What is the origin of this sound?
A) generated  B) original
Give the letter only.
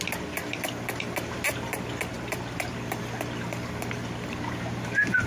B